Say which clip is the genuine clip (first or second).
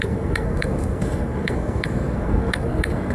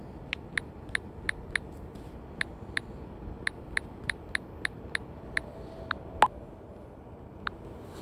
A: second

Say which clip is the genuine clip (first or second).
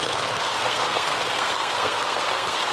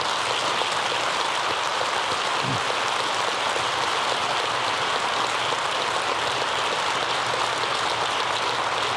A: second